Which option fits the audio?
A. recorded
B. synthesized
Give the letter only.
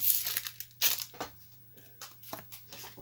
A